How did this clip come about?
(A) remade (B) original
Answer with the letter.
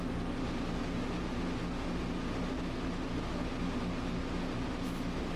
B